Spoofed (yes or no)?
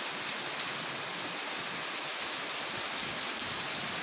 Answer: no